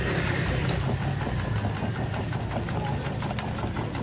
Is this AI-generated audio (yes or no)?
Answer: no